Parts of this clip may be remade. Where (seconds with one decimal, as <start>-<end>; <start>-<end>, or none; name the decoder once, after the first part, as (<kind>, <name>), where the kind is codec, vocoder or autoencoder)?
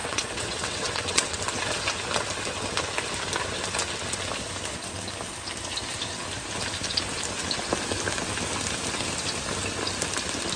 0.0-1.4 (vocoder, WaveNeXt)